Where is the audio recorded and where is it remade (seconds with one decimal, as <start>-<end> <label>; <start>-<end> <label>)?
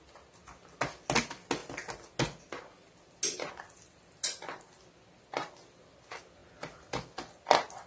0.0-7.9 recorded